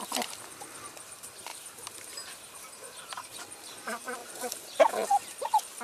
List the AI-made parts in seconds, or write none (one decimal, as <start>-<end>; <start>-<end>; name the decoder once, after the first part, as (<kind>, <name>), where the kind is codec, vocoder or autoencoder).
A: 1.5-3.4 (vocoder, BigVGAN v2); 4.2-4.9

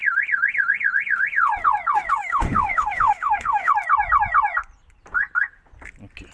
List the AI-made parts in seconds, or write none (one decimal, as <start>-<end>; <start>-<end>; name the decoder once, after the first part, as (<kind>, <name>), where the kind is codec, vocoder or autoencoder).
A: 2.2-3.7 (autoencoder, DAC-VAE)

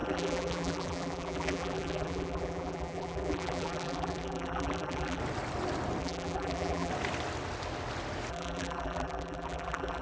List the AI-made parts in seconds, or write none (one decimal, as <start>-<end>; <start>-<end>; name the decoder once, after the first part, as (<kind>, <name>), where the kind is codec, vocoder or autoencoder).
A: 0.0-5.2 (vocoder, BigVGAN v2); 6.0-6.9; 8.3-10.0

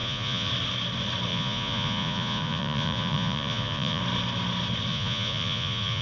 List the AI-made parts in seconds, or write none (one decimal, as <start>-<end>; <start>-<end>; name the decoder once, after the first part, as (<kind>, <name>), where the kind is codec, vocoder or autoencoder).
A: 0.0-0.5 (vocoder, Vocos); 1.3-4.0; 4.9-6.0

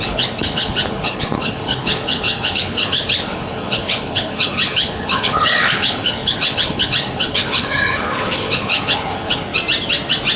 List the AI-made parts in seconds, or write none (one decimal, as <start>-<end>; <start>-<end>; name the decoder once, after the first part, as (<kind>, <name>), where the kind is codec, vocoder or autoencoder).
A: 0.0-9.5 (codec, HILCodec)